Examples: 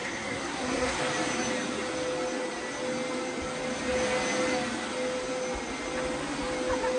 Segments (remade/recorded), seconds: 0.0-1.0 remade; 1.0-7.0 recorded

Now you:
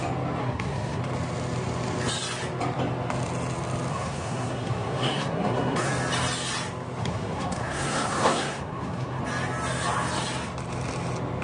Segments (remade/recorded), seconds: 0.0-0.4 recorded; 0.4-1.0 remade; 1.0-3.9 recorded; 3.9-5.9 remade; 5.9-7.0 recorded; 7.0-9.2 remade; 9.2-11.4 recorded